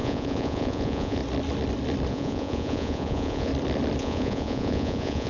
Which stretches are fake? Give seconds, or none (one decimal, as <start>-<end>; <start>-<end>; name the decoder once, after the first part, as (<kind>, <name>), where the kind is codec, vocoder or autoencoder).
0.0-1.2 (vocoder, Vocos); 2.1-3.5; 4.0-5.3